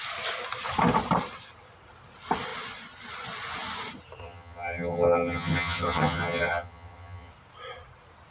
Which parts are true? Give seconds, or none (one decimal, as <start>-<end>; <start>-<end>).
0.0-4.2; 7.3-8.3